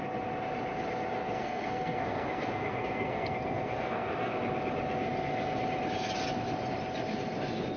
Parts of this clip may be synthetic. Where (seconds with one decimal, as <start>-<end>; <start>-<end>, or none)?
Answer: 1.2-4.3